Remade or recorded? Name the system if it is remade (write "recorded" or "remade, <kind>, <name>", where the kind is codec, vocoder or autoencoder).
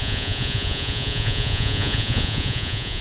remade, vocoder, Vocos